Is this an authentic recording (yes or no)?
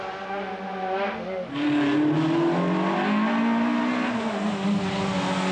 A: yes